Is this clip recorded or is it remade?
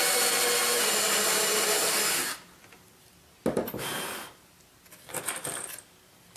recorded